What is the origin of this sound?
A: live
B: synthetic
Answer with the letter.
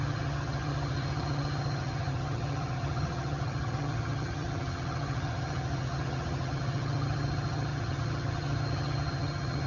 B